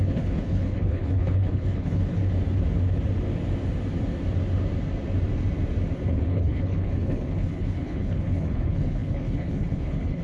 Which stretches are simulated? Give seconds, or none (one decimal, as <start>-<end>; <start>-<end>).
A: 0.0-2.2; 6.1-10.2

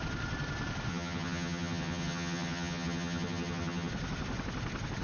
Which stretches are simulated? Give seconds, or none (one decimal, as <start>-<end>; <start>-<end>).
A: 0.9-3.9

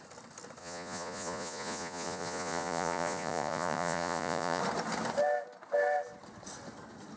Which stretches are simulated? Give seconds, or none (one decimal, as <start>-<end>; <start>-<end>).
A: 0.6-4.6

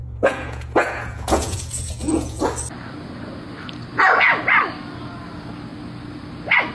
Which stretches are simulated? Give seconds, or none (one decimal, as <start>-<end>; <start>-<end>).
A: 0.0-2.4

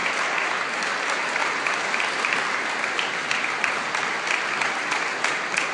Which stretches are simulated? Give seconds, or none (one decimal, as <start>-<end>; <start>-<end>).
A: 1.4-4.8